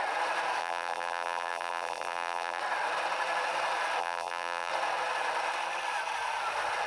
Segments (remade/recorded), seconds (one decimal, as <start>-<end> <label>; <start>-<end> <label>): 0.0-0.6 recorded; 0.6-2.6 remade; 2.6-4.0 recorded; 4.0-4.7 remade; 4.7-6.9 recorded